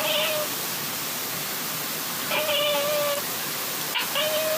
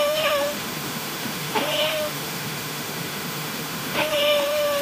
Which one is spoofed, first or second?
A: second